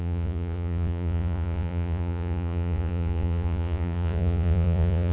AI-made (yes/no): yes